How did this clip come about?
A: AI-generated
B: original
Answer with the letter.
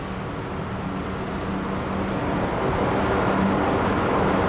B